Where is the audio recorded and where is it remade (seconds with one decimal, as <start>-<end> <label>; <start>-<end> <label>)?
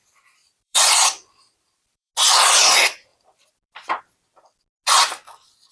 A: 0.0-2.1 remade; 2.1-3.1 recorded; 3.1-4.0 remade; 4.0-5.7 recorded